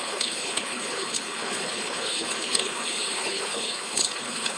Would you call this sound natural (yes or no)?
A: no